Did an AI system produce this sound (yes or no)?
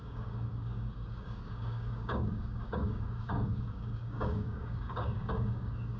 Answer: yes